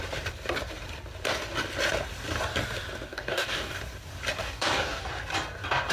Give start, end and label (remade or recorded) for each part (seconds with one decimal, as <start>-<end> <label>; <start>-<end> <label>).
0.0-3.1 recorded; 3.1-3.8 remade; 3.8-4.4 recorded; 4.4-5.0 remade; 5.0-5.9 recorded